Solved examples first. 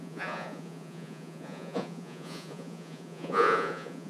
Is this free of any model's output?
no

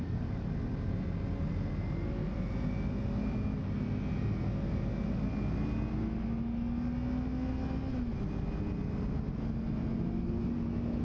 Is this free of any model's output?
yes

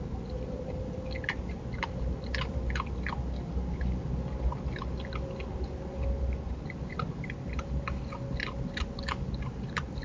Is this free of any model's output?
yes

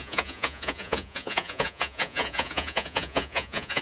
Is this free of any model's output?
no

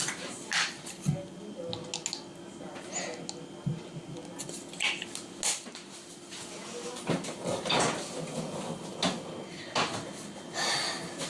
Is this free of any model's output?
yes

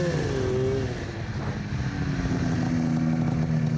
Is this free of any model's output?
yes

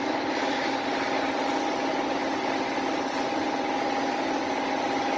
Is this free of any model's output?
yes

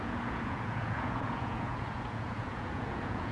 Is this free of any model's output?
no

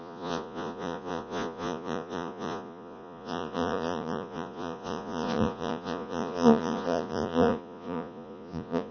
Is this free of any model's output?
no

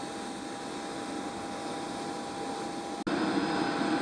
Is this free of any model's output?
yes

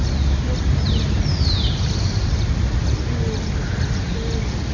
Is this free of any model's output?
yes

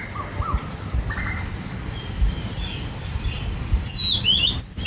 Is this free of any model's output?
yes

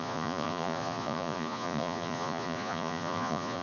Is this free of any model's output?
no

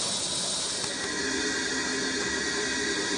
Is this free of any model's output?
yes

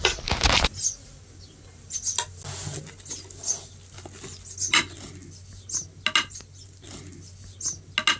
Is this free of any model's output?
yes